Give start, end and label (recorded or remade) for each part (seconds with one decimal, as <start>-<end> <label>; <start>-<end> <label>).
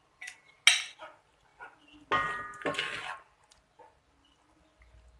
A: 0.0-5.2 recorded